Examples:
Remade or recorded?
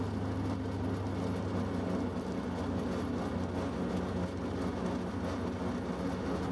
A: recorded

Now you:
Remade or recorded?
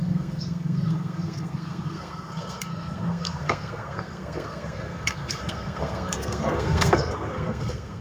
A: remade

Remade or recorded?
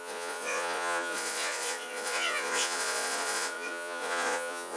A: remade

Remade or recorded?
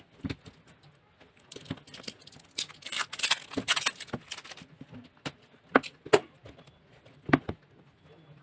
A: recorded